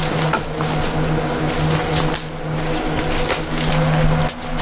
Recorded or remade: recorded